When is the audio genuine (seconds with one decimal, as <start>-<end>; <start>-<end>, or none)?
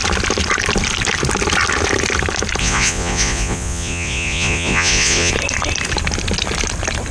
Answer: 0.0-2.6; 5.3-7.1